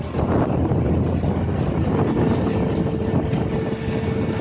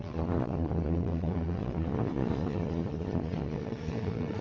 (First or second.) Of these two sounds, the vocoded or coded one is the second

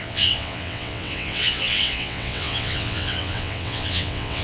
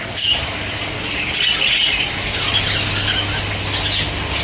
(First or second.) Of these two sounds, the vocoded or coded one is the first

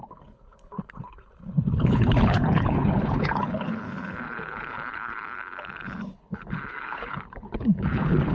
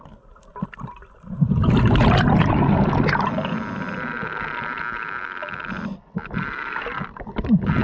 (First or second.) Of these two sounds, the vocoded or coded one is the first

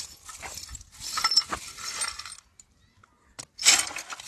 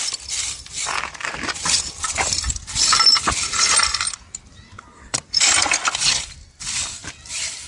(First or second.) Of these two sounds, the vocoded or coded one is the second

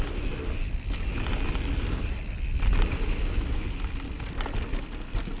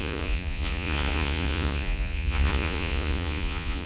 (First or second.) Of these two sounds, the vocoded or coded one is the second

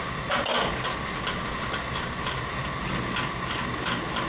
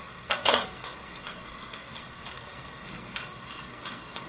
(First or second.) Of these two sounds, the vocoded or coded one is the second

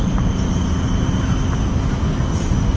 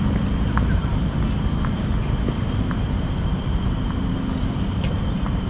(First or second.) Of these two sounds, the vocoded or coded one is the second